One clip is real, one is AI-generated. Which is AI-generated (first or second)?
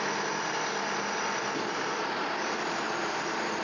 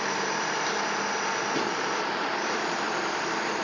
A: second